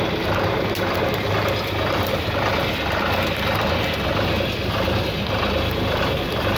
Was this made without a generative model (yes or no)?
yes